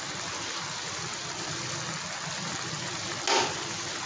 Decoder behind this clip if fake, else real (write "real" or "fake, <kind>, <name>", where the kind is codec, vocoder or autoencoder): real